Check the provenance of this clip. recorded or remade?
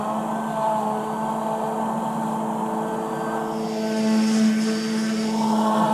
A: recorded